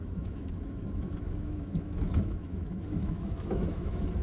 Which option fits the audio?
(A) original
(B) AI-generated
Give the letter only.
B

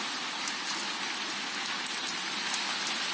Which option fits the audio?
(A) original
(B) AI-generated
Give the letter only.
A